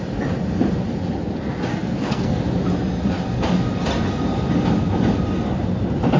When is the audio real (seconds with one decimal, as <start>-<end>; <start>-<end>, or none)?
0.0-1.7; 2.4-6.2